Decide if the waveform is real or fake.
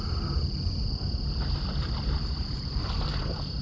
real